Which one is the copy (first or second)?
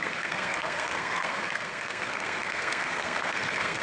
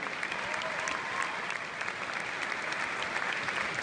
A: first